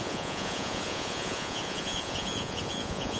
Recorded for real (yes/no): no